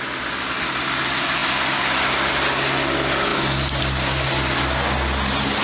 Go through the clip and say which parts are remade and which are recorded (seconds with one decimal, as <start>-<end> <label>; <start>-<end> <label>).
0.0-5.6 recorded